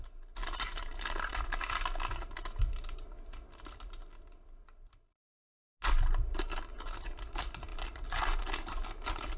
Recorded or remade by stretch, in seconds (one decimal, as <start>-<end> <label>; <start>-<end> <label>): 0.0-7.7 recorded; 7.7-8.4 remade; 8.4-9.4 recorded